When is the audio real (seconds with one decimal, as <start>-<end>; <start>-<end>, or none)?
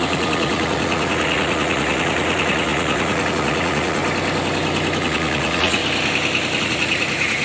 4.0-5.0; 5.8-6.6